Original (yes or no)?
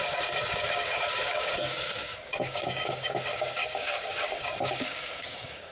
no